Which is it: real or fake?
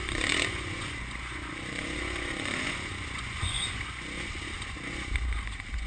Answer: fake